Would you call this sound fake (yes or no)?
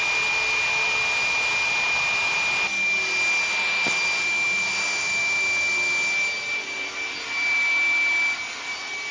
no